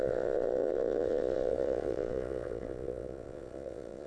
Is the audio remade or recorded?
remade